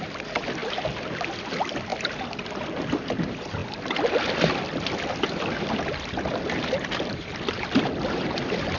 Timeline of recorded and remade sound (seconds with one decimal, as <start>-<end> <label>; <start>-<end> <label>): 0.0-0.6 remade; 0.6-1.3 recorded; 1.3-1.9 remade; 1.9-3.2 recorded; 3.2-8.8 remade